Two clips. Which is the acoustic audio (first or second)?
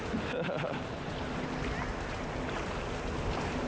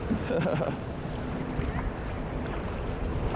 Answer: first